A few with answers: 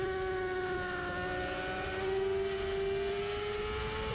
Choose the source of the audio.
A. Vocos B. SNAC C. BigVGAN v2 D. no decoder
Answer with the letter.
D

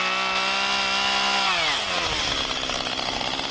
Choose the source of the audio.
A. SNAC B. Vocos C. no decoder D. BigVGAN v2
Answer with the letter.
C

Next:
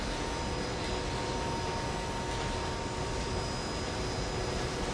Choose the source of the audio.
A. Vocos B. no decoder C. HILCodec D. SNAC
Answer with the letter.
B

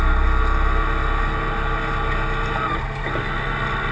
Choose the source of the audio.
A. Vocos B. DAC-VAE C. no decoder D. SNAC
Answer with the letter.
C